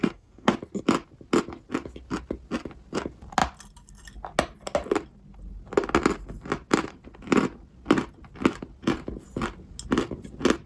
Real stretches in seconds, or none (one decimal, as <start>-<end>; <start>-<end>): 0.5-10.7